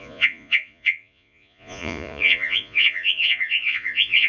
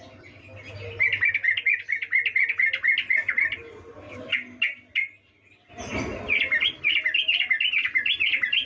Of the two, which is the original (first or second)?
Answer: second